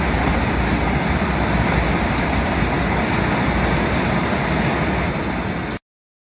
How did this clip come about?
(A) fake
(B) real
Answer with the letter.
B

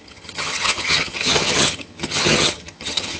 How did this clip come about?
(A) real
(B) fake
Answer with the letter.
B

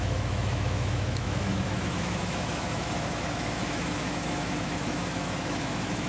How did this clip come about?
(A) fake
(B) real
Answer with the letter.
A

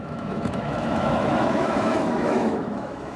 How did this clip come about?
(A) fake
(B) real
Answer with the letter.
A